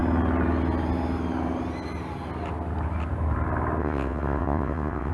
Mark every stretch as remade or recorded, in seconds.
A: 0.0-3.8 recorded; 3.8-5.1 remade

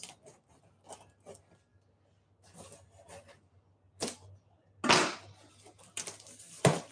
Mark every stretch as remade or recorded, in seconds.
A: 0.0-6.9 recorded

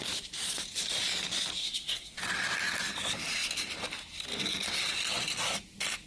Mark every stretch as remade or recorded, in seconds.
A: 0.0-1.6 recorded; 1.6-2.2 remade; 2.2-6.1 recorded

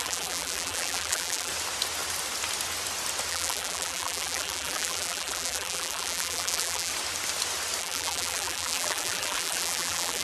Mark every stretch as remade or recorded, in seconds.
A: 0.0-1.5 remade; 1.5-3.3 recorded; 3.3-6.9 remade; 6.9-7.8 recorded; 7.8-10.2 remade

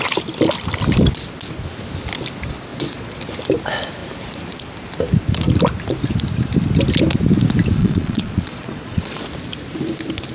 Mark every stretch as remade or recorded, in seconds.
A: 0.0-2.7 recorded; 2.7-3.2 remade; 3.2-7.8 recorded; 7.8-9.3 remade; 9.3-10.3 recorded

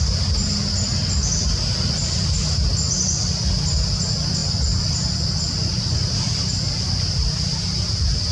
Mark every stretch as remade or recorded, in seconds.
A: 0.0-8.3 recorded

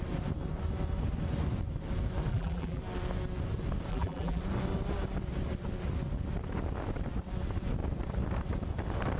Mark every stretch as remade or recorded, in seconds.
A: 0.0-2.3 recorded; 2.3-2.8 remade; 2.8-3.9 recorded; 3.9-4.4 remade; 4.4-9.2 recorded

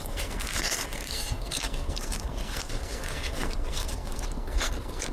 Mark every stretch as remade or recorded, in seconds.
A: 0.0-5.1 remade